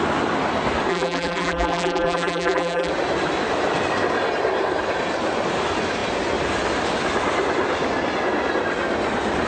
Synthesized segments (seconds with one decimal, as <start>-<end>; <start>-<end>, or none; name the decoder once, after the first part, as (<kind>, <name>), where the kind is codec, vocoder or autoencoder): 0.9-2.9 (vocoder, BigVGAN v2)